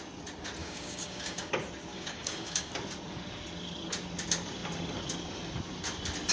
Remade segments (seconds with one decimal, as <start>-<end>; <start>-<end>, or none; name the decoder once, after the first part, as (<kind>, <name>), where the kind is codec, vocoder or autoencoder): 0.6-1.5 (codec, DAC); 1.9-2.7